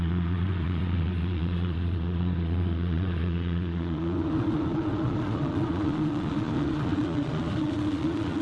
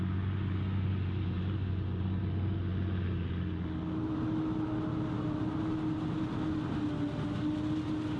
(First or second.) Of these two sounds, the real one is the second